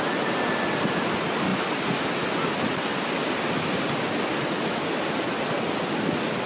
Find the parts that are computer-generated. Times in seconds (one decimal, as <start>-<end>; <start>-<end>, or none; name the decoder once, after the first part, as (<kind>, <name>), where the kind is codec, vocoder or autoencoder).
none